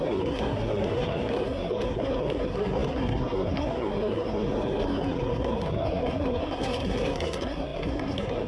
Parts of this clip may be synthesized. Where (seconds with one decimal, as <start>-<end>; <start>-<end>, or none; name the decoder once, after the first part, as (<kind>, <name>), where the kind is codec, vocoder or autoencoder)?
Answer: 0.0-8.5 (codec, SNAC)